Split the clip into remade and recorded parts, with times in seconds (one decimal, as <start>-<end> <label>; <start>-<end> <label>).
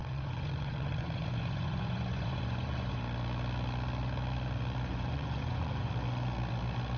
0.0-3.0 remade; 3.0-4.9 recorded; 4.9-5.9 remade; 5.9-7.0 recorded